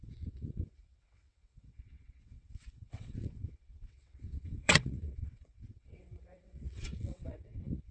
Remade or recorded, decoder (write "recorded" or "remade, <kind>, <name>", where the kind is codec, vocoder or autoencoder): remade, vocoder, WaveNeXt